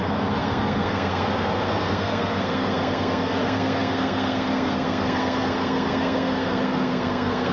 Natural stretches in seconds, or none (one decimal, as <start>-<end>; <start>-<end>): none